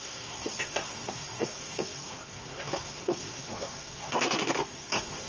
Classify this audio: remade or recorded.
remade